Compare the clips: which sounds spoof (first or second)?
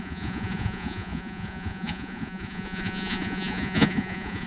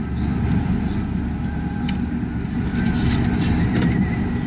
first